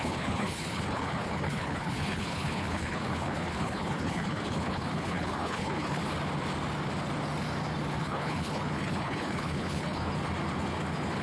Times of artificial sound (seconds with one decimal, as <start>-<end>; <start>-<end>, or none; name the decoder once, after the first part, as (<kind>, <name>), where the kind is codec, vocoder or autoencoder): 0.0-6.0 (codec, HILCodec); 8.0-10.1